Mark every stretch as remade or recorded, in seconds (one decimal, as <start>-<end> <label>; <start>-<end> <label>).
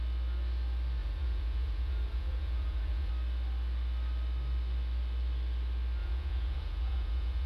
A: 0.0-1.0 recorded; 1.0-3.1 remade; 3.1-6.0 recorded; 6.0-7.5 remade